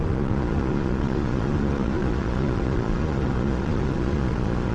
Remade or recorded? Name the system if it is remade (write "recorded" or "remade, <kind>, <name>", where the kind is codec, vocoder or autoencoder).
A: remade, vocoder, Vocos